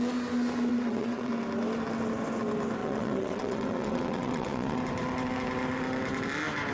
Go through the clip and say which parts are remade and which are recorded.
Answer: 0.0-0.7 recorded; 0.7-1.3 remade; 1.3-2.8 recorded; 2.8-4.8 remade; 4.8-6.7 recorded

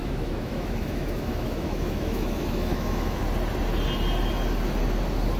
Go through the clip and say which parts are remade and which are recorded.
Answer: 0.0-3.2 remade; 3.2-5.4 recorded

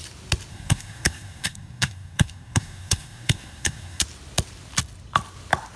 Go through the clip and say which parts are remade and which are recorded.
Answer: 0.0-0.5 recorded; 0.5-4.0 remade; 4.0-5.8 recorded

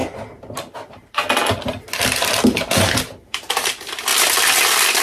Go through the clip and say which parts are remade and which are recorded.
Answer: 0.0-3.0 recorded; 3.0-4.1 remade; 4.1-4.6 recorded; 4.6-5.0 remade